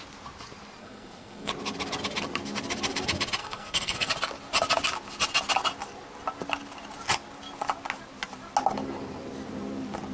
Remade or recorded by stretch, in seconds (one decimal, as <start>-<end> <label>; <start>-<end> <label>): 0.0-0.8 recorded; 0.8-1.5 remade; 1.5-3.4 recorded; 3.4-4.1 remade; 4.1-10.1 recorded